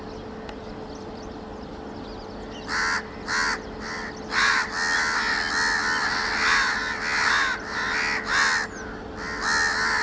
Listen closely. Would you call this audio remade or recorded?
recorded